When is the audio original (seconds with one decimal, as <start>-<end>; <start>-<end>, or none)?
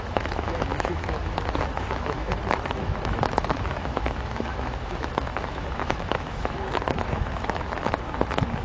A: none